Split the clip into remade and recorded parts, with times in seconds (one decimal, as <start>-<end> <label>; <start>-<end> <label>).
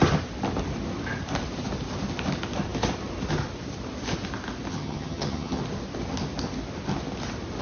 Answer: 0.0-4.7 recorded; 4.7-5.6 remade; 5.6-7.6 recorded